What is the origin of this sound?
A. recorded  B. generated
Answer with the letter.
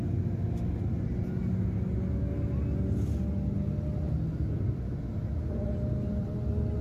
A